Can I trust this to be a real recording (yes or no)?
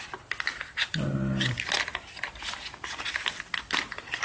yes